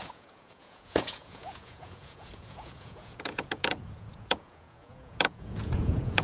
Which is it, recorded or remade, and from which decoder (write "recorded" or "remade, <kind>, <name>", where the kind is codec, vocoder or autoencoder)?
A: remade, vocoder, Vocos